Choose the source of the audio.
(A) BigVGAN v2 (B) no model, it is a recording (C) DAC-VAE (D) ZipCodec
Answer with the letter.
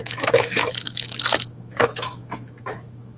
C